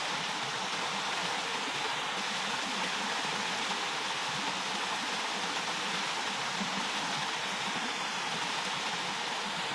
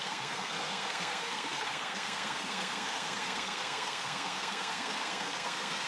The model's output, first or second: second